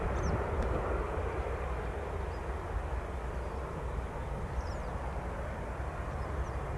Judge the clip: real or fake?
real